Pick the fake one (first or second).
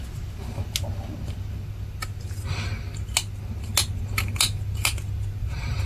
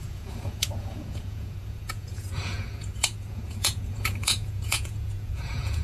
second